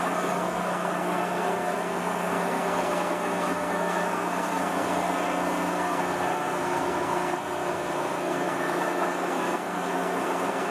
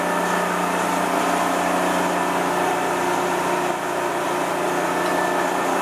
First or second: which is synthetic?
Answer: first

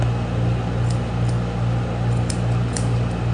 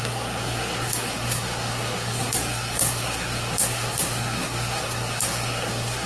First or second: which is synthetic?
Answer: second